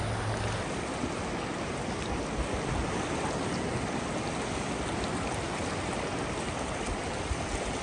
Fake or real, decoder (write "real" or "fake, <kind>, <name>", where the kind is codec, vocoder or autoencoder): real